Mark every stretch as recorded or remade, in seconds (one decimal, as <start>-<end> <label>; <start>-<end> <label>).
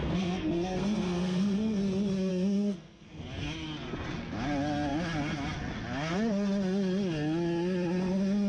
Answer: 0.0-1.8 remade; 1.8-2.3 recorded; 2.3-3.2 remade; 3.2-8.5 recorded